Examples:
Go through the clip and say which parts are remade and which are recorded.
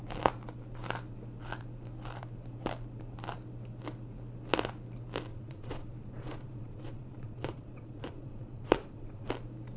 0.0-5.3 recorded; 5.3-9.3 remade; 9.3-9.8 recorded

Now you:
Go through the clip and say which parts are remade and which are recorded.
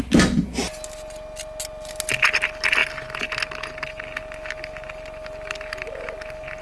0.0-6.6 recorded